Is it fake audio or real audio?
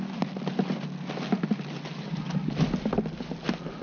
real